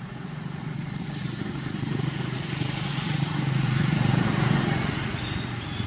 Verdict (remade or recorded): remade